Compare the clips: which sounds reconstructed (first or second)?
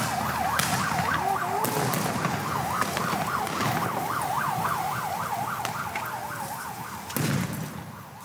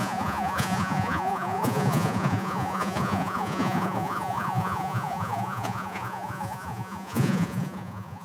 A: second